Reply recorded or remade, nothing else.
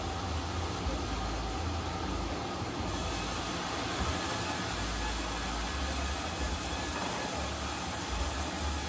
recorded